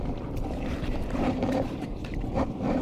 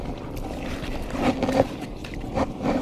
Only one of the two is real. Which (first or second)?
second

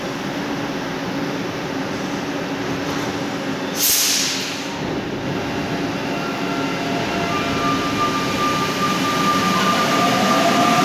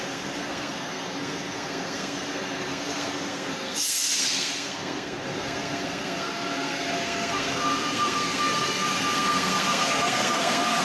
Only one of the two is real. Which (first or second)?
first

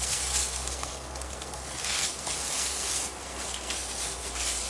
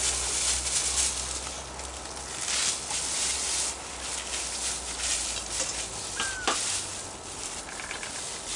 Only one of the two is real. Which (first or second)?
second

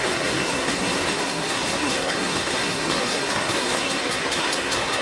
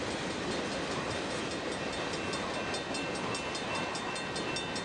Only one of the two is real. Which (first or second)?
second